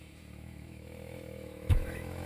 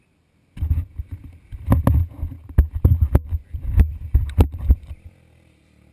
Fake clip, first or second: first